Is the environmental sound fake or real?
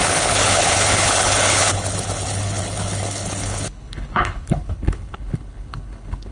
fake